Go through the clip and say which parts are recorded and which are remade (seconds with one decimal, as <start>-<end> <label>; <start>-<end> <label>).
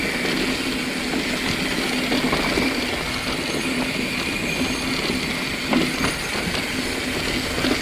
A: 0.0-7.8 recorded